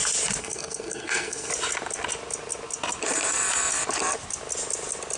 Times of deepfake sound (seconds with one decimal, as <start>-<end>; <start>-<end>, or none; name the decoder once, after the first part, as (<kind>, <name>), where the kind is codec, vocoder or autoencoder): 0.4-1.5 (codec, SNAC)